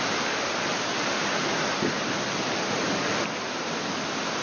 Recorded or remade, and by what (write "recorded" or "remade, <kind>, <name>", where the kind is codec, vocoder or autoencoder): recorded